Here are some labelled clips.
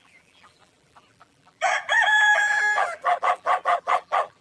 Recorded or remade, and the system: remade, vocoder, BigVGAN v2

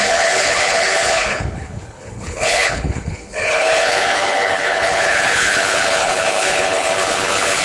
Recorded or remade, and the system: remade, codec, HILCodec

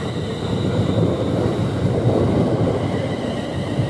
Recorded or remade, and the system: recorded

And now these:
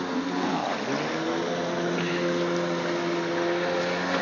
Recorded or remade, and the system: recorded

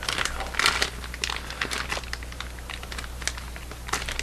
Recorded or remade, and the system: recorded